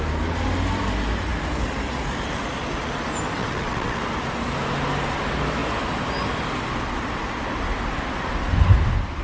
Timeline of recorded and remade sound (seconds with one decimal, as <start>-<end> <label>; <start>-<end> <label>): 0.0-3.4 recorded; 3.4-4.0 remade; 4.0-9.2 recorded